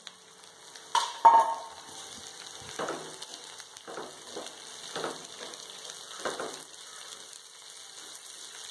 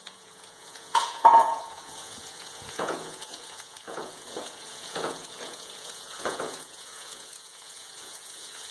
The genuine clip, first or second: first